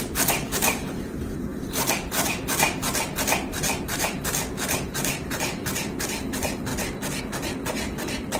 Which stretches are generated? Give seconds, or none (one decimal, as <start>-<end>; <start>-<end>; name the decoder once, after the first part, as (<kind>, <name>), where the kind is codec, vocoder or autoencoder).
0.0-6.7 (vocoder, BigVGAN v2); 7.2-8.4